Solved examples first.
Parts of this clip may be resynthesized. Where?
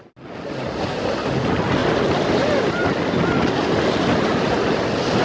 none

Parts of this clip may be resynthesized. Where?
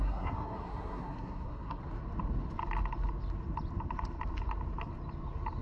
0.0-1.8 (codec, SNAC)